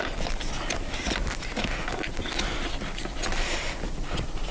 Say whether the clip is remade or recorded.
recorded